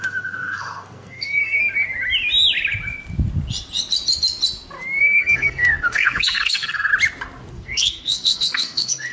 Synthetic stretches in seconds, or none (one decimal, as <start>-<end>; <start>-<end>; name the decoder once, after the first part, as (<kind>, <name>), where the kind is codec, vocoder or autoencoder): 0.0-1.6 (codec, SNAC); 5.0-6.9; 7.5-9.1